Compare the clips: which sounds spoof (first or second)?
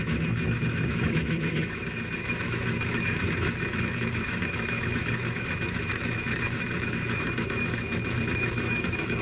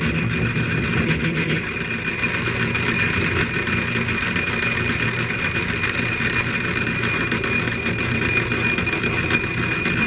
first